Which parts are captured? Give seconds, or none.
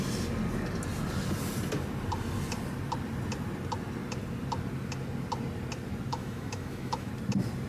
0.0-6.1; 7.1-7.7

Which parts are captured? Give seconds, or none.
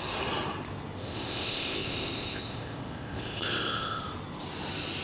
0.0-1.0; 4.0-5.0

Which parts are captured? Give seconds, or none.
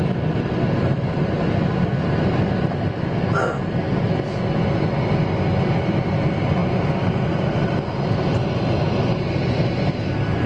0.0-10.5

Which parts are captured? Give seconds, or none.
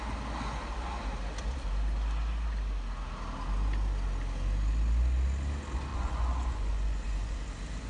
0.0-5.9; 7.4-7.9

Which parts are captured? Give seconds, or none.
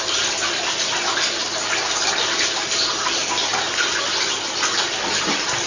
0.0-5.7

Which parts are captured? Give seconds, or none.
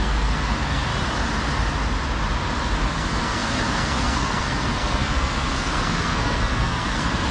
0.9-2.8